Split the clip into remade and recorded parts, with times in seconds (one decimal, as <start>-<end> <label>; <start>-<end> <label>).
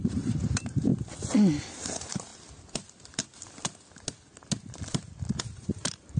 0.0-0.9 remade; 0.9-1.6 recorded; 1.6-2.3 remade; 2.3-5.4 recorded; 5.4-6.2 remade